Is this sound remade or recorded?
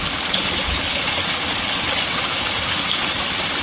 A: recorded